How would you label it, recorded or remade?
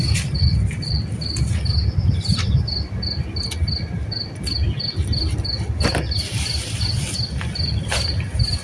recorded